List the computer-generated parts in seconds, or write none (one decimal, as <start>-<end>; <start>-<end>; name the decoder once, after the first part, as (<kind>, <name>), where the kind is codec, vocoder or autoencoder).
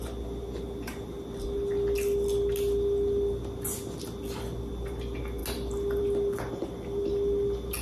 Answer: none